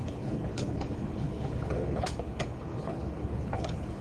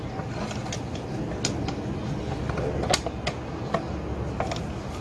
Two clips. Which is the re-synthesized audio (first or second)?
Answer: first